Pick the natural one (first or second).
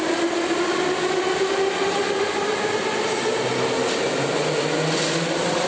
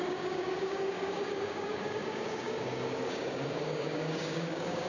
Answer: first